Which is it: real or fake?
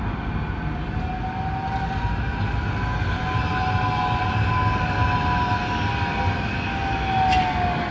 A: real